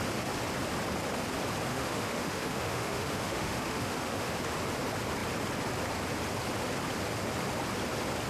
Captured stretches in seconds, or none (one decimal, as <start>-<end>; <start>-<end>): 0.0-1.7; 4.3-8.3